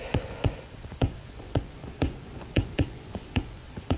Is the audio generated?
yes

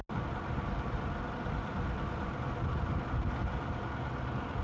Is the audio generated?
no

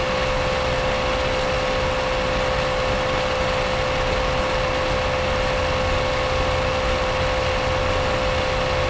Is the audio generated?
no